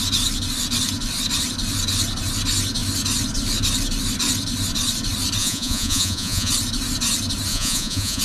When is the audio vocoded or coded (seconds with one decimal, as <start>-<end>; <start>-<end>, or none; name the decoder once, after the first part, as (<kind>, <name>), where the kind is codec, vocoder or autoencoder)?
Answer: 5.4-6.5 (vocoder, Vocos); 7.5-8.2